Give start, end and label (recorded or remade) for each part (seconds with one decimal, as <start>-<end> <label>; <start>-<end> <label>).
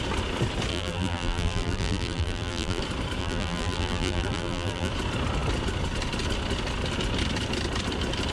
0.0-0.7 recorded; 0.7-2.8 remade; 2.8-3.2 recorded; 3.2-4.9 remade; 4.9-8.3 recorded